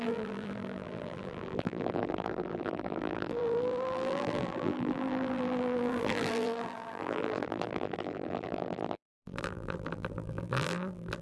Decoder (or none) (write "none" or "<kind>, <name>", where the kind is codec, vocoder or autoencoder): vocoder, BigVGAN v2